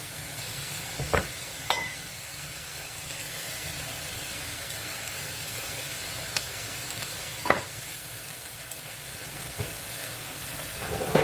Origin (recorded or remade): remade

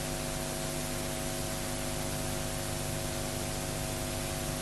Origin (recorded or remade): recorded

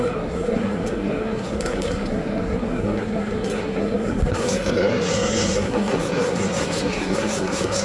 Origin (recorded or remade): remade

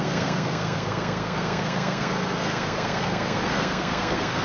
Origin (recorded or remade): remade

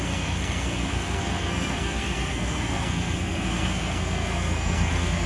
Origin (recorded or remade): remade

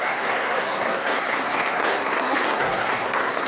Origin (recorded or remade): remade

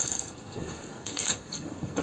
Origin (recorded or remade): remade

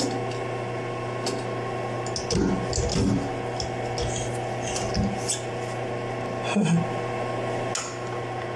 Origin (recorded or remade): recorded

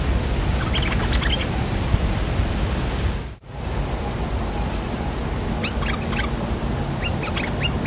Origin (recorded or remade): recorded